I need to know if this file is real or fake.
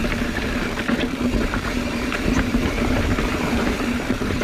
fake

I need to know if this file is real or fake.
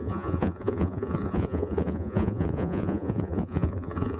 fake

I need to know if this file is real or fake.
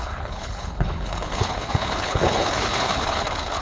fake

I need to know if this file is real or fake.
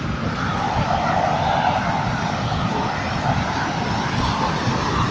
real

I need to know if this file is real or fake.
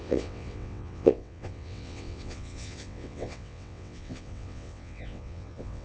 fake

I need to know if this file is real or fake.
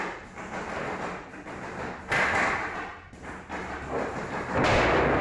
real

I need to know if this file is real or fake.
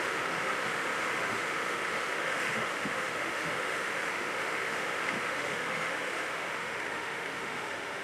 fake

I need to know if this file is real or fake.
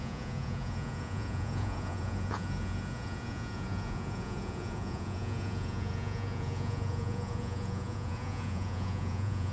fake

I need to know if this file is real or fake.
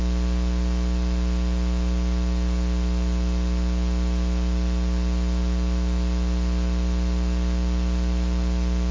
real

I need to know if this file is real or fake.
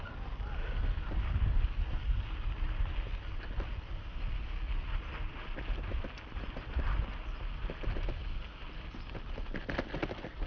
real